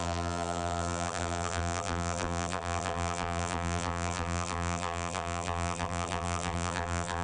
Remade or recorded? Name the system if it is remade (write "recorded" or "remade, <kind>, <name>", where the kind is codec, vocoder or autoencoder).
remade, vocoder, BigVGAN v2